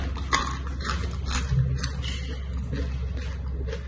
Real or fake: real